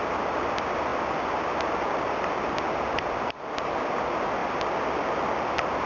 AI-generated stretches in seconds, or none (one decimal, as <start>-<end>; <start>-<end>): none

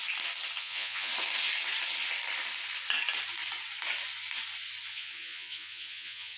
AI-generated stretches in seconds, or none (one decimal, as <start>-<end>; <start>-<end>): 0.6-1.1; 4.9-6.4